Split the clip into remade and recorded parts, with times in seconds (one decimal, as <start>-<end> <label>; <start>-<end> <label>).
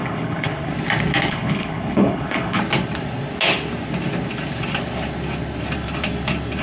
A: 0.0-0.7 remade; 0.7-1.3 recorded; 1.3-2.6 remade; 2.6-6.6 recorded